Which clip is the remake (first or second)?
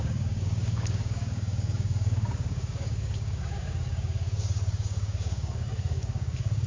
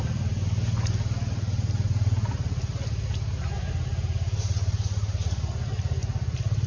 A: first